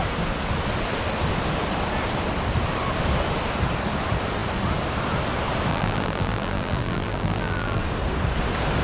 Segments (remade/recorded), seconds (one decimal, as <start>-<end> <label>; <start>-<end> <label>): 0.0-5.7 recorded; 5.7-7.8 remade; 7.8-8.8 recorded